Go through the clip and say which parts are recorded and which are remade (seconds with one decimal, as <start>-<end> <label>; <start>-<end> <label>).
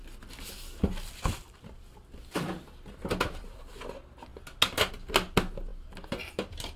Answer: 0.0-3.7 remade; 3.7-6.8 recorded